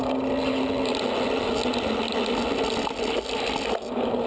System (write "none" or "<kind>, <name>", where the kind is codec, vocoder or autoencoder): none